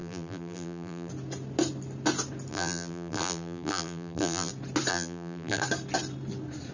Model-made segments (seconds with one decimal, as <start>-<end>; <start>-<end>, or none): 0.0-1.1; 2.5-4.5; 4.9-5.6